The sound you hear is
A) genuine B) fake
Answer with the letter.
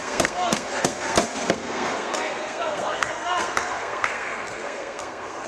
B